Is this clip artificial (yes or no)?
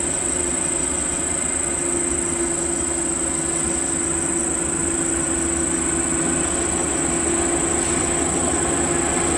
no